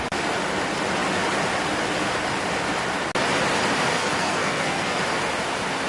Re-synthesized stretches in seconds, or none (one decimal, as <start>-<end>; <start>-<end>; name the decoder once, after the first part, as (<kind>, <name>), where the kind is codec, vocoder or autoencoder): 4.0-5.0 (codec, SNAC)